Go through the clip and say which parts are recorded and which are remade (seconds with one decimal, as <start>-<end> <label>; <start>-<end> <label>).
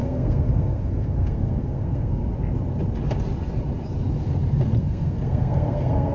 0.0-2.2 remade; 2.2-4.8 recorded; 4.8-6.1 remade